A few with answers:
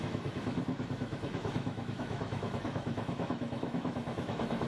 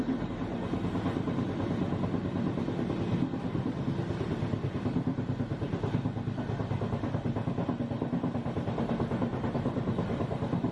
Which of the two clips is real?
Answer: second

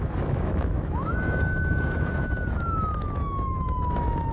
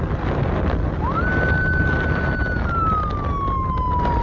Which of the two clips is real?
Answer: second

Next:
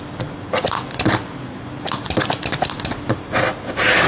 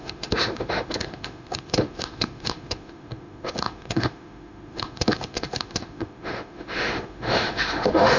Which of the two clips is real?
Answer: first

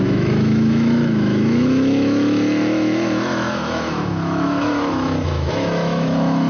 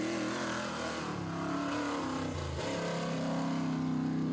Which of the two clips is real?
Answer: second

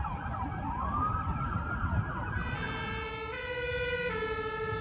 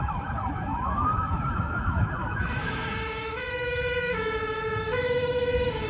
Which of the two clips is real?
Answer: first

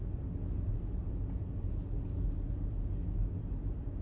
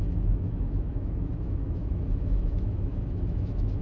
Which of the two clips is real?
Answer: first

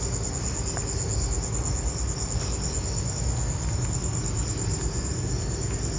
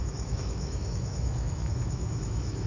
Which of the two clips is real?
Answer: first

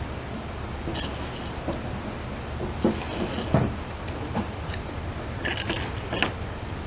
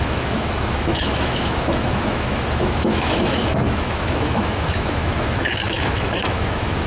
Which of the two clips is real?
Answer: first